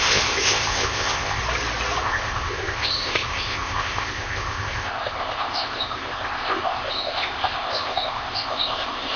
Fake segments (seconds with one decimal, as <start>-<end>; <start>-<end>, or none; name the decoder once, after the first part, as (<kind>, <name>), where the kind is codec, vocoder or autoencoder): 0.0-1.4 (codec, ZipCodec); 2.0-9.2